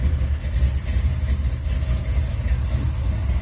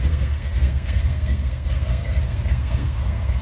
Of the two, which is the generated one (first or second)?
second